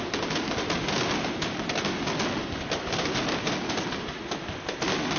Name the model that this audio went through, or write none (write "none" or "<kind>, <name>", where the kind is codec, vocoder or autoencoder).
none